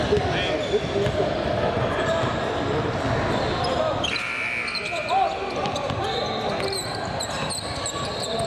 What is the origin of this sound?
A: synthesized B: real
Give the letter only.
B